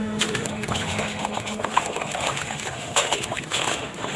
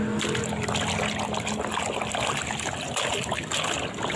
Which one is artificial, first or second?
first